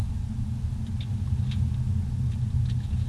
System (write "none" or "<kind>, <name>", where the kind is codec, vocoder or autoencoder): none